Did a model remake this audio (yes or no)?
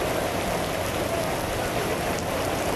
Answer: no